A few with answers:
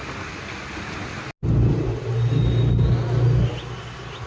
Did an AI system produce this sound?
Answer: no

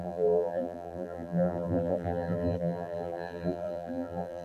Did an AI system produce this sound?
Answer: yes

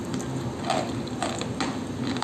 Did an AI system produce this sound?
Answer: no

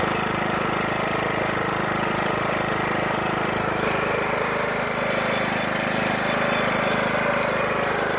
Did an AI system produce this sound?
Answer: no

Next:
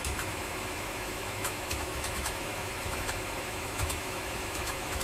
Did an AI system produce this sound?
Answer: yes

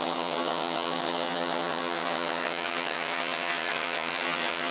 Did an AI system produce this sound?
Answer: yes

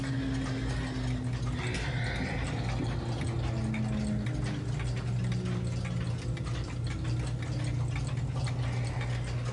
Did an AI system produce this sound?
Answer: no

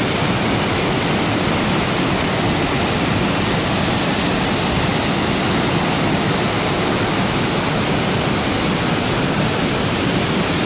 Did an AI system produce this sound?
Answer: no